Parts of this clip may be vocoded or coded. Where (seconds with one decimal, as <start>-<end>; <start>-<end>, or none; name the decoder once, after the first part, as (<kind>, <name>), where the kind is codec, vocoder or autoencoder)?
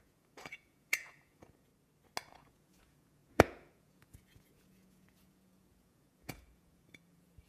0.0-1.7 (vocoder, Vocos); 2.3-7.5